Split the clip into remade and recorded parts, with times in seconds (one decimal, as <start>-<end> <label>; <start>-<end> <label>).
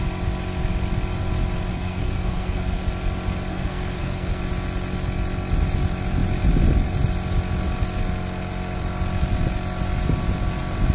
0.0-1.7 recorded; 1.7-2.8 remade; 2.8-3.5 recorded; 3.5-4.4 remade; 4.4-10.9 recorded